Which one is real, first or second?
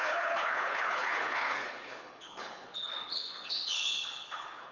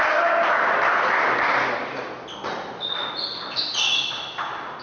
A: second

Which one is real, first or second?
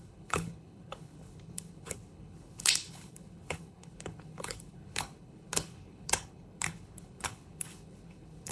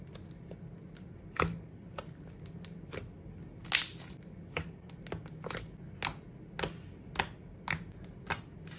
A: second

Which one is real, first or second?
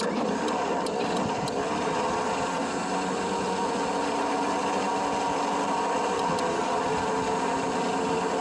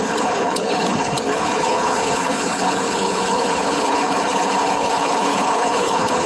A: first